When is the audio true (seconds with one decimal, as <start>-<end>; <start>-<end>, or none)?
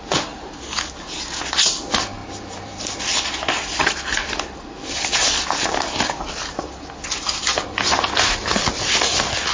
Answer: 0.0-2.2; 2.9-9.5